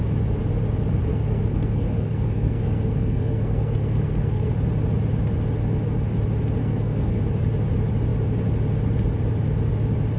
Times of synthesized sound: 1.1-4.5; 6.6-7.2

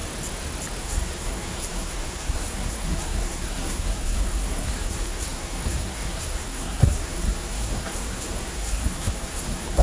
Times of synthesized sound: 0.8-9.8

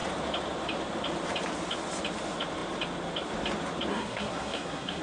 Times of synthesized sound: 3.9-5.0

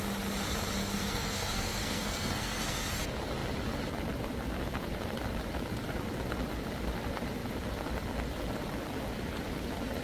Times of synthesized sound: 0.8-3.0

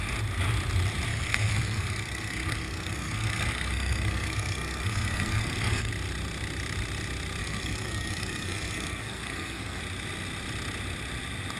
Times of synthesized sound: 1.1-5.9; 7.4-9.8

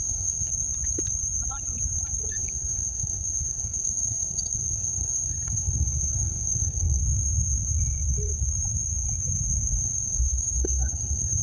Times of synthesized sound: 0.0-0.5; 2.3-7.0; 9.8-11.4